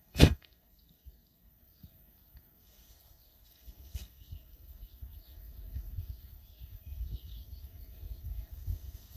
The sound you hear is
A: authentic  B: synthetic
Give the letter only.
B